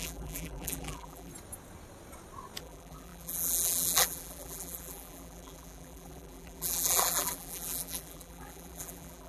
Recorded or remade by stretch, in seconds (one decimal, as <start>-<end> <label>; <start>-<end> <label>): 0.0-1.3 remade; 1.3-2.6 recorded; 2.6-9.3 remade